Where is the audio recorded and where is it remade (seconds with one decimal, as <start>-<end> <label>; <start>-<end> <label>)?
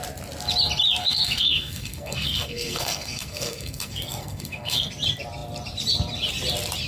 0.0-1.0 recorded; 1.0-4.9 remade; 4.9-6.9 recorded